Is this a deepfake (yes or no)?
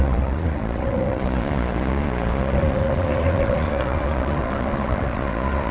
yes